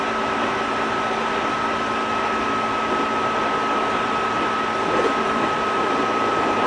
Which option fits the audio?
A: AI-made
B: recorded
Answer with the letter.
A